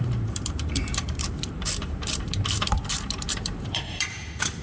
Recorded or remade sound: remade